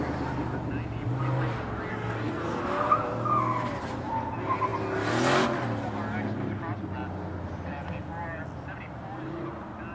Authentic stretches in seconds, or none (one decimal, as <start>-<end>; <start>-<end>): 0.0-1.9; 2.6-9.9